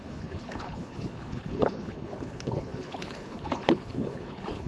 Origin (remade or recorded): remade